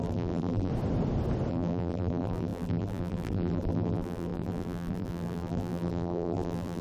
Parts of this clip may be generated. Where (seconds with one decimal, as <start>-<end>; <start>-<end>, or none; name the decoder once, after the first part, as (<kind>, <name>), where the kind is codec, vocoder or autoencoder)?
0.0-0.7 (vocoder, BigVGAN v2); 1.5-6.8